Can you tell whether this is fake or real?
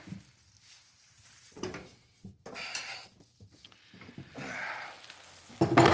real